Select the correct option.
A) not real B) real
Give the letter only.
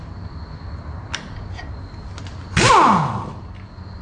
B